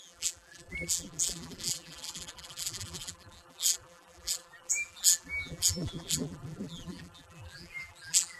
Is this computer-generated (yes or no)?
yes